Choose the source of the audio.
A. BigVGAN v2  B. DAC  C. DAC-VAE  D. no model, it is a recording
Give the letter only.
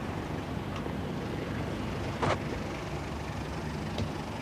D